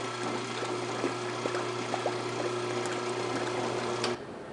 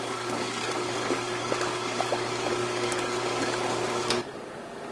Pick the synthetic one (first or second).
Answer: second